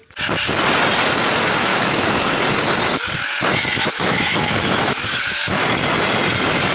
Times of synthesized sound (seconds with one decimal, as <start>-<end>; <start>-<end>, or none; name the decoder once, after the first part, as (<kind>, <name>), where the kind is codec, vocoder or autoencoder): 1.7-2.3 (autoencoder, DAC-VAE); 3.8-5.6